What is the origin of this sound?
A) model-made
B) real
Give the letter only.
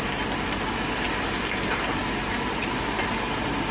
B